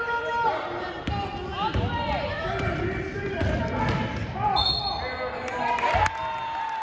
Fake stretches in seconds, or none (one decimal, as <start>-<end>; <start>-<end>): none